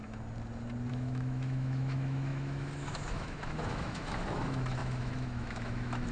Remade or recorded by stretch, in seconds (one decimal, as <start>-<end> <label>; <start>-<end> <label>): 0.0-0.9 recorded; 0.9-6.1 remade